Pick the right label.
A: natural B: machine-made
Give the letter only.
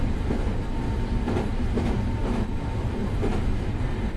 A